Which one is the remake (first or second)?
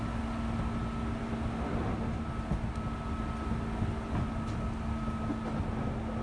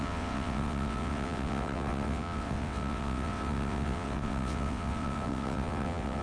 second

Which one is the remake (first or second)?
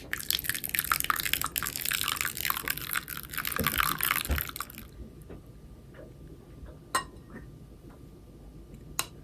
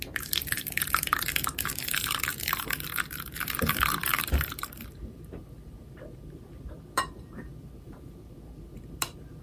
second